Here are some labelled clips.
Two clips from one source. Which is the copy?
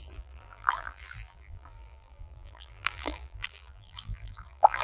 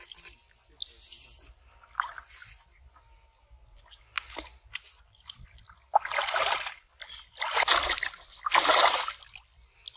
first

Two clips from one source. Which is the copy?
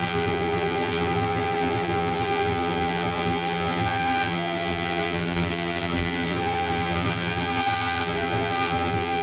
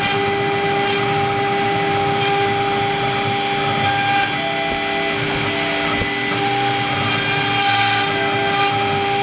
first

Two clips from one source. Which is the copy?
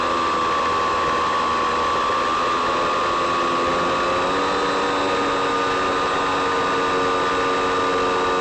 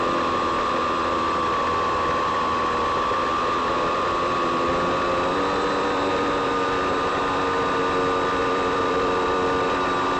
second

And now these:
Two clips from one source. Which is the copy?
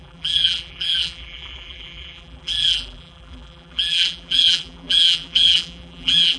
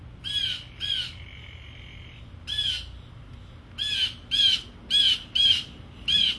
first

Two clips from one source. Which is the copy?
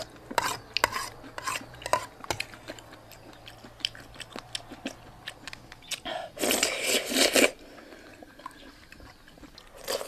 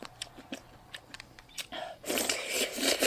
second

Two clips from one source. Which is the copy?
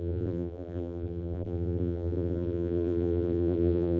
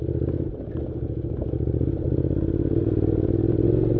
first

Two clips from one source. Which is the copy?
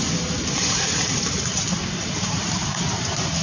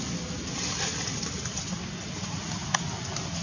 first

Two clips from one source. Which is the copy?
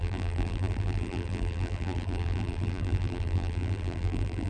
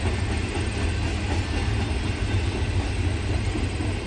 first